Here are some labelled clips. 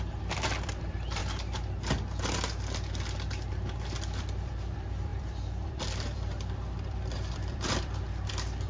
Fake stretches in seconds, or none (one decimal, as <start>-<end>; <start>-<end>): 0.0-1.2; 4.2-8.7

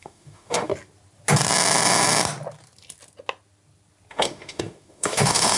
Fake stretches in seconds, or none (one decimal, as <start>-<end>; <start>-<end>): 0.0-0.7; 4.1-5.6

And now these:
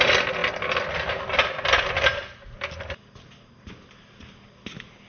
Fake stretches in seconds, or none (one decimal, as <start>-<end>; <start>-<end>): none

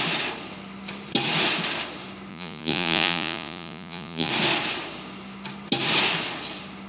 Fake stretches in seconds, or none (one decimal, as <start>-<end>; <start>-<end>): 2.3-4.3

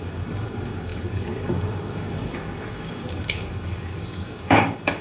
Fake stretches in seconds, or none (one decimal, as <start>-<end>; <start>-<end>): 0.0-5.0

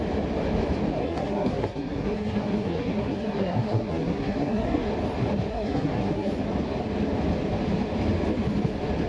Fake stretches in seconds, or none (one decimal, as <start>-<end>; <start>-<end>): 1.0-4.9; 5.5-6.3